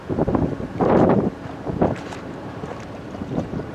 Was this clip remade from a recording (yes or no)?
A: yes